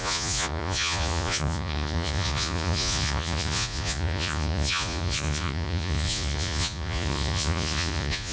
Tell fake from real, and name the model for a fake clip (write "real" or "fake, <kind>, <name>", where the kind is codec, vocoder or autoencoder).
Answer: fake, vocoder, Vocos